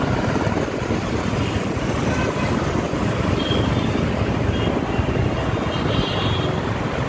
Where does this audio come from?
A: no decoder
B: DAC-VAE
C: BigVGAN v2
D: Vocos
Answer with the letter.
A